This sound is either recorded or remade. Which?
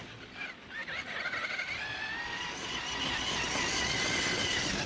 recorded